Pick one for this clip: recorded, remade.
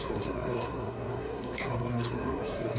remade